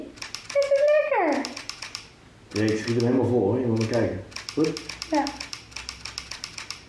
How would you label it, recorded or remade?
recorded